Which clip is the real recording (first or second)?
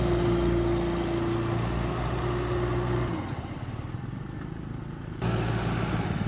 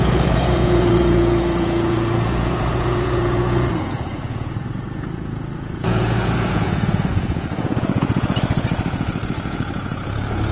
first